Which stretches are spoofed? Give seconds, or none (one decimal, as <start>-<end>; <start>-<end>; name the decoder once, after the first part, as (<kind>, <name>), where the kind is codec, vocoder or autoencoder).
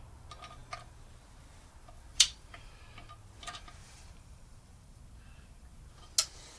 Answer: 2.1-2.7 (vocoder, BigVGAN v2); 3.8-5.0